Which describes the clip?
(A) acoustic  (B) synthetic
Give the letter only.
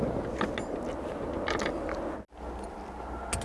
A